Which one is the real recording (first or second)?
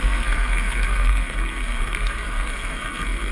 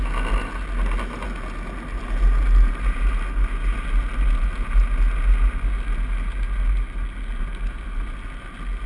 second